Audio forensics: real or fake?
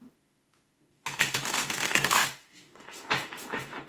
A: fake